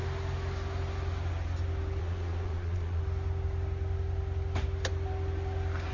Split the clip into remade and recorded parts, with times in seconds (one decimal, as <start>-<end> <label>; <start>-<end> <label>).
0.0-2.0 recorded; 2.0-3.0 remade; 3.0-5.9 recorded